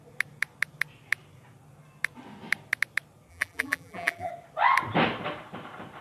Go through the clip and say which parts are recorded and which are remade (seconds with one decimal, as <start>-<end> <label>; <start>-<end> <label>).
0.0-3.3 recorded; 3.3-4.3 remade; 4.3-6.0 recorded